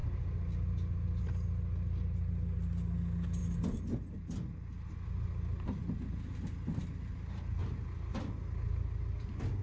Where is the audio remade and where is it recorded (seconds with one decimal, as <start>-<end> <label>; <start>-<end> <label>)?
0.0-7.6 recorded; 7.6-8.3 remade; 8.3-9.6 recorded